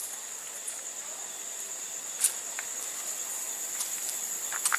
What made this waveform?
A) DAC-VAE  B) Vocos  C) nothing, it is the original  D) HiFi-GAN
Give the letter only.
C